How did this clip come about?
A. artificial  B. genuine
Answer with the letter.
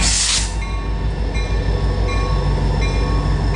B